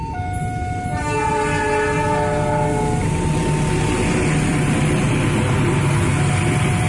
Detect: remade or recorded recorded